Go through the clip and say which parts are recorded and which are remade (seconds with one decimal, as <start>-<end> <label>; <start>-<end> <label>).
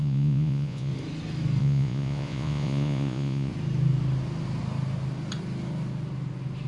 0.0-0.9 remade; 0.9-1.6 recorded; 1.6-3.5 remade; 3.5-6.7 recorded